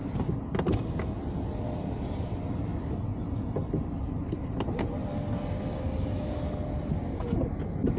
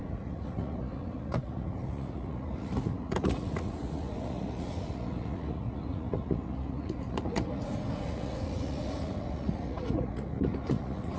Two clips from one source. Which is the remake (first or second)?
second